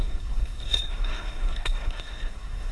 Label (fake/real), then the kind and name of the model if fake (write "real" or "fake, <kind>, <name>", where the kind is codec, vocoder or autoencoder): fake, codec, SNAC